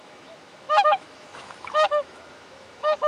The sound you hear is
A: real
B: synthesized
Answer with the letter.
B